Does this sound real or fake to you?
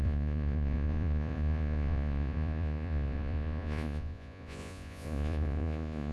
fake